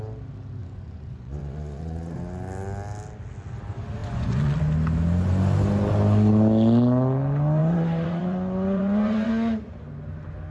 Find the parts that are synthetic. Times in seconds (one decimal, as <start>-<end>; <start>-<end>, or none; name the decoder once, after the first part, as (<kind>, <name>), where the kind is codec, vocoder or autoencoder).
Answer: 0.6-2.2 (vocoder, Vocos); 4.0-4.6; 7.6-9.3